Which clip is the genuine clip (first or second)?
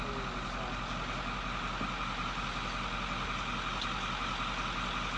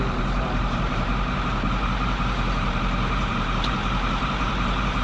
first